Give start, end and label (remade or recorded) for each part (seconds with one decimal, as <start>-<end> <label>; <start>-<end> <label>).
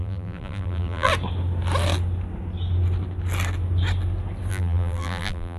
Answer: 0.0-1.1 remade; 1.1-4.5 recorded; 4.5-5.6 remade